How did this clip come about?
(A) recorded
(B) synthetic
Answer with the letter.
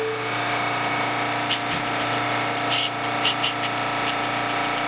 A